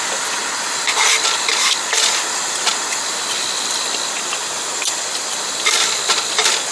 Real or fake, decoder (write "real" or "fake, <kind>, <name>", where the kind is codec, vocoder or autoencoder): real